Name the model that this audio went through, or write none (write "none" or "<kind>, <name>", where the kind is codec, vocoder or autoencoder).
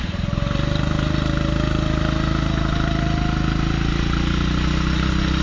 none